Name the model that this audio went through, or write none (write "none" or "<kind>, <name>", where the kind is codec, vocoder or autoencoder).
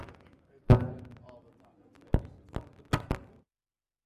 none